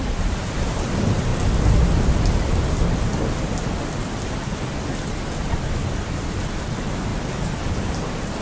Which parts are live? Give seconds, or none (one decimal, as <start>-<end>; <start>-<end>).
0.0-8.4